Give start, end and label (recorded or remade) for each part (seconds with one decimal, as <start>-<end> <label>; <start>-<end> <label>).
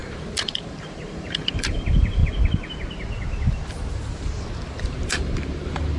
0.0-0.5 recorded; 0.5-2.2 remade; 2.2-4.8 recorded; 4.8-6.0 remade